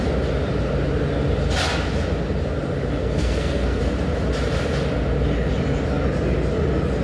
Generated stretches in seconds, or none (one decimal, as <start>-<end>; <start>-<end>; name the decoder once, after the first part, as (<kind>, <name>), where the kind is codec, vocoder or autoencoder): 3.0-3.8 (codec, SNAC)